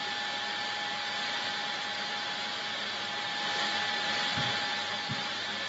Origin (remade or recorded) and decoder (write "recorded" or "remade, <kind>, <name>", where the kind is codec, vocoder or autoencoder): recorded